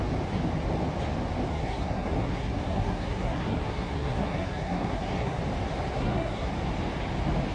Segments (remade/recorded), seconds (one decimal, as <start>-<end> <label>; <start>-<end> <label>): 0.0-1.5 recorded; 1.5-5.4 remade; 5.4-5.9 recorded; 5.9-6.5 remade; 6.5-7.5 recorded